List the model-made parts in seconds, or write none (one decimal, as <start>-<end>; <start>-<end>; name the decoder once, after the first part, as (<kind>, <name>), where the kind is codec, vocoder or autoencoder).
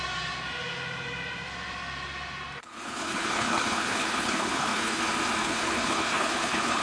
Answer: 2.6-5.0 (codec, HILCodec); 5.4-6.8